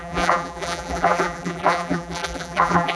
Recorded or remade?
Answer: remade